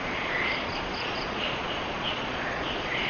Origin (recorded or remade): remade